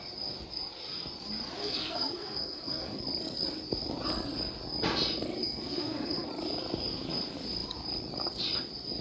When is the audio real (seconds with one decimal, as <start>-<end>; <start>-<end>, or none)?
0.0-1.6; 3.0-5.4; 6.3-9.0